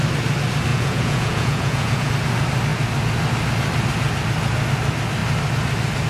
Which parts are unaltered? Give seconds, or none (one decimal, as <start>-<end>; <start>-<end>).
0.0-0.7; 2.1-6.1